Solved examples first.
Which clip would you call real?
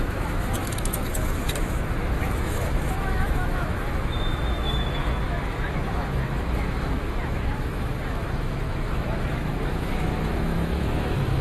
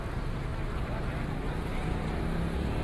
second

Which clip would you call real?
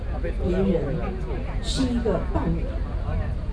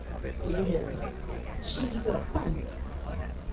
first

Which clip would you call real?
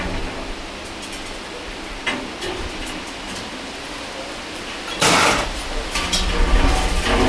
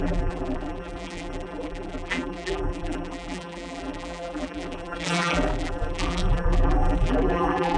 first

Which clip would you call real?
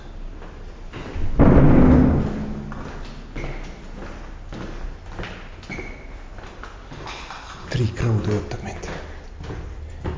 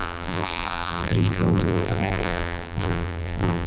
first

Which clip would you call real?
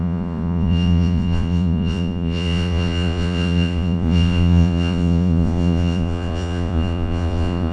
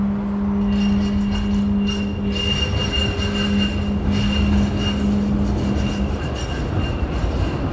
second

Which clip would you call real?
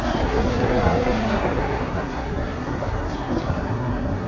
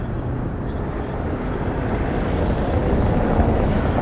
second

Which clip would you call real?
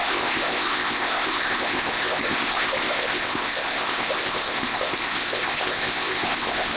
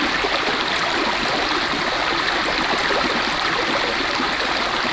second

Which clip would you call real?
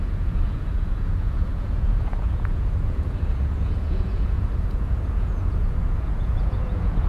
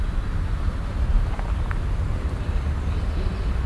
second